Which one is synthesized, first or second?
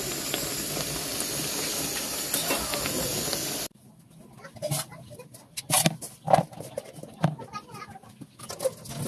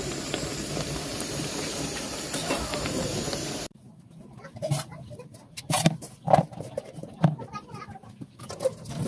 second